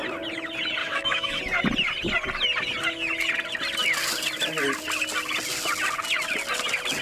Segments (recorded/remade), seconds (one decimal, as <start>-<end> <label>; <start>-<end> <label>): 0.0-0.8 recorded; 0.8-1.4 remade; 1.4-7.0 recorded